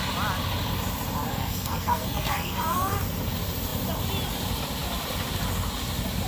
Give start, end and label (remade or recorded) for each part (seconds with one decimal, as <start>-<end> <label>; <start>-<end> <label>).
0.0-1.3 recorded; 1.3-2.9 remade; 2.9-6.3 recorded